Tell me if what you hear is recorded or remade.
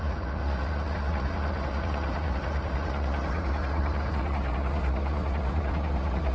remade